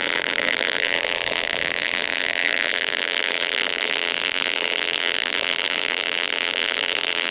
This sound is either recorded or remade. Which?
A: remade